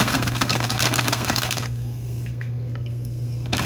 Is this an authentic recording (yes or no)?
no